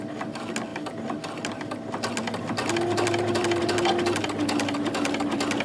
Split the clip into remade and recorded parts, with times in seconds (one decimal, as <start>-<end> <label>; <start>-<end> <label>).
0.0-5.6 recorded